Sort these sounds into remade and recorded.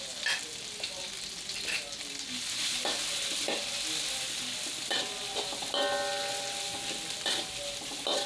recorded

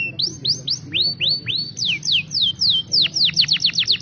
recorded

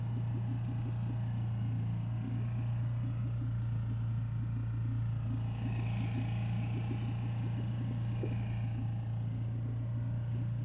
recorded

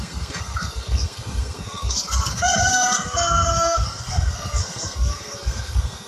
remade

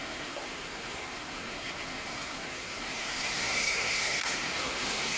remade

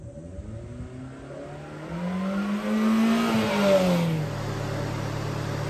recorded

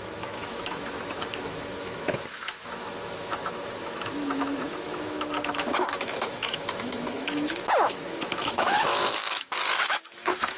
remade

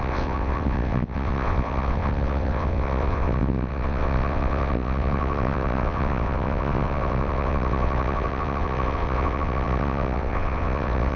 remade